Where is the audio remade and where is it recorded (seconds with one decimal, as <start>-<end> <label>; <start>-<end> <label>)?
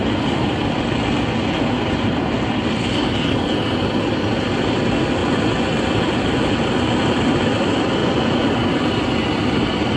0.0-5.2 recorded; 5.2-5.9 remade; 5.9-8.0 recorded; 8.0-8.5 remade; 8.5-10.0 recorded